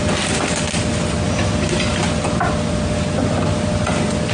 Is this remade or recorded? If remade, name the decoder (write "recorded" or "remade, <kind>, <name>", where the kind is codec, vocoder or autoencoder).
recorded